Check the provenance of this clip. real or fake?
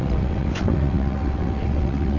fake